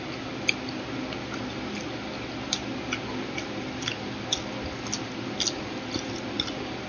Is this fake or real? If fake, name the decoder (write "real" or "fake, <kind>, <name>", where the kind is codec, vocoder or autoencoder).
real